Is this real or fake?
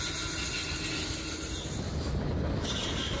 real